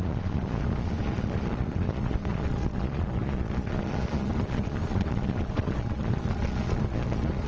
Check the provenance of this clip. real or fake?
fake